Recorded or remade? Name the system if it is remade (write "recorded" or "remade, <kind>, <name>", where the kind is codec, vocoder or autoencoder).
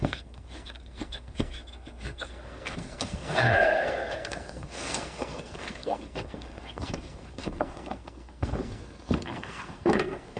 remade, codec, SNAC